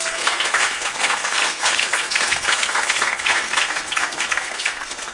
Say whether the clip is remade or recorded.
remade